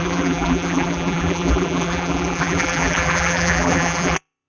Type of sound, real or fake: fake